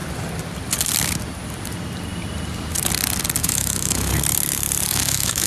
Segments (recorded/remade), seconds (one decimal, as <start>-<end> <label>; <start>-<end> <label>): 0.0-3.4 recorded; 3.4-4.1 remade; 4.1-4.9 recorded; 4.9-5.5 remade